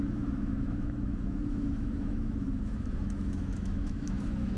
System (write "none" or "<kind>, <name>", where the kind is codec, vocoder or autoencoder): autoencoder, DAC-VAE